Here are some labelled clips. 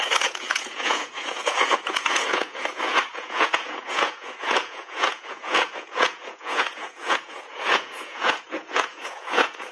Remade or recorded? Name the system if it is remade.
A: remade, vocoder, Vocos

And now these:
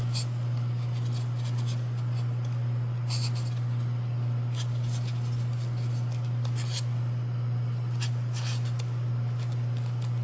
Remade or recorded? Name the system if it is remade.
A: recorded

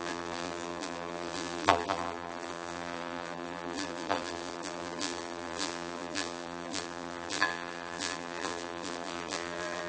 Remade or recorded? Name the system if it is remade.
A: remade, vocoder, BigVGAN v2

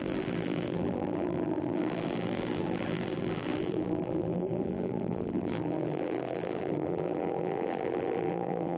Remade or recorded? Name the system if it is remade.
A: remade, vocoder, BigVGAN v2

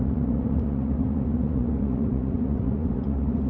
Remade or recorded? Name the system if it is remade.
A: remade, vocoder, Vocos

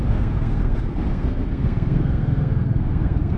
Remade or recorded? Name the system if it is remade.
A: remade, codec, SNAC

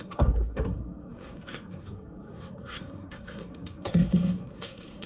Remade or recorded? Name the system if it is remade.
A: remade, codec, SNAC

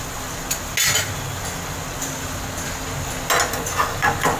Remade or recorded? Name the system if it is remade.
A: recorded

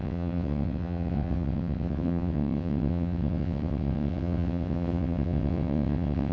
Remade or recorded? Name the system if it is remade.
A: remade, vocoder, WaveNeXt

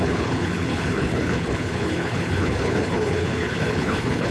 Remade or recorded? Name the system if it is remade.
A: remade, codec, HILCodec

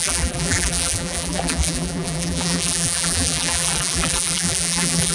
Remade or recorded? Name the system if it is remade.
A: remade, vocoder, BigVGAN v2